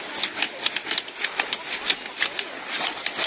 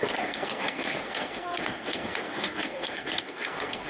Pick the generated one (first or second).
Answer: second